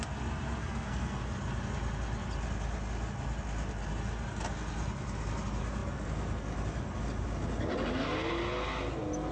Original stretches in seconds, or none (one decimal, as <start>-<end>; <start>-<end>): 0.0-0.6; 1.2-9.3